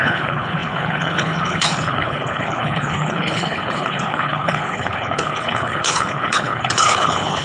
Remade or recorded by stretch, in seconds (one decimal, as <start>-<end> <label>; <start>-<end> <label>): 0.0-7.4 remade